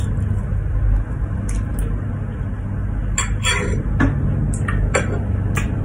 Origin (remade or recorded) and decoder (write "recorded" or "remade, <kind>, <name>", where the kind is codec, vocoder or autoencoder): recorded